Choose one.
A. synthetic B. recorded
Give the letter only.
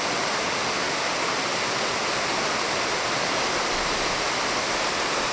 B